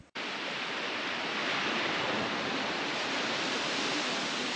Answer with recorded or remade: remade